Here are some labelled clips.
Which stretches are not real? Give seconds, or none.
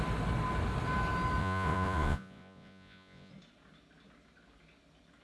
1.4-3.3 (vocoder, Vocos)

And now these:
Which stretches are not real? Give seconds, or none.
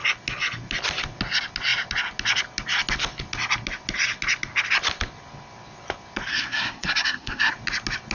6.3-7.5 (codec, SNAC)